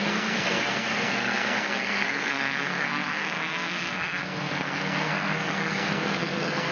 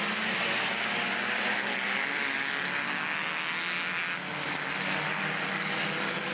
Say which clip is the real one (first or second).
second